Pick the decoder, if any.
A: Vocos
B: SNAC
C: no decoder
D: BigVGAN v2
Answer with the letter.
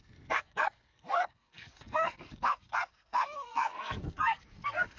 B